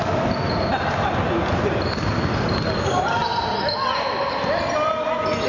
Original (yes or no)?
yes